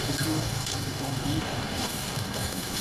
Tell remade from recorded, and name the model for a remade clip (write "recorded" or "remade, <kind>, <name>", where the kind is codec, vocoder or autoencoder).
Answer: remade, codec, DAC